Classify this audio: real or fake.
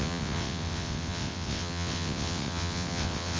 fake